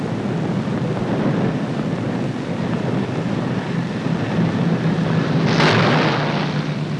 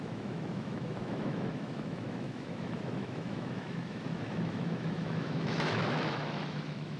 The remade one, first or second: second